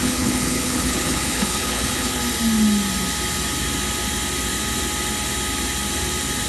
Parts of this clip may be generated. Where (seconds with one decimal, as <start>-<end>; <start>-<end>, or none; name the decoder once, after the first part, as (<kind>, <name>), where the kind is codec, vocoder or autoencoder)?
0.0-2.2 (codec, HILCodec)